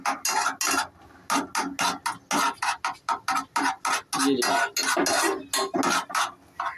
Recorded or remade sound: recorded